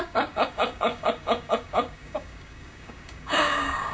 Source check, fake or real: fake